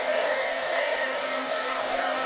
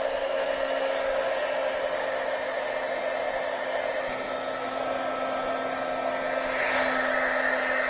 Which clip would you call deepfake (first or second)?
first